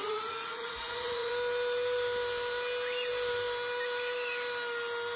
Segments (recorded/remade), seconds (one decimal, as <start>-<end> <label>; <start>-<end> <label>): 0.0-1.3 remade; 1.3-5.2 recorded

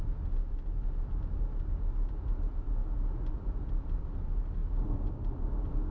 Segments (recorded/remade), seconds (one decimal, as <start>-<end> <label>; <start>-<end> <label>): 0.0-5.9 recorded

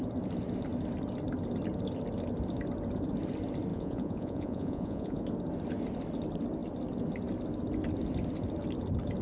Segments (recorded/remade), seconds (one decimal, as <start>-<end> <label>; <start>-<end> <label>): 0.0-3.7 recorded; 3.7-5.2 remade; 5.2-9.2 recorded

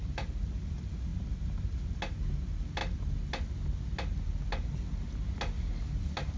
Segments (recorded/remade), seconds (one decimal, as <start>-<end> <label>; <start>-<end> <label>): 0.0-6.4 recorded

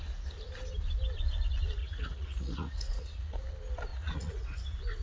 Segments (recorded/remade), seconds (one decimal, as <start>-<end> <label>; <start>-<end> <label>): 0.0-1.8 recorded; 1.8-3.4 remade; 3.4-3.9 recorded; 3.9-4.6 remade; 4.6-5.0 recorded

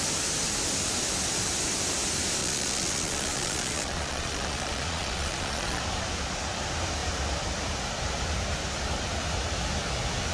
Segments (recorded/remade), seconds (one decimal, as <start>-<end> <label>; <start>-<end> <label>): 0.0-2.4 recorded; 2.4-5.8 remade; 5.8-10.3 recorded

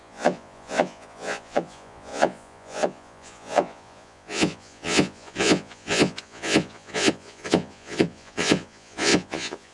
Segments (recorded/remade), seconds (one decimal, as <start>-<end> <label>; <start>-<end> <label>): 0.0-9.7 remade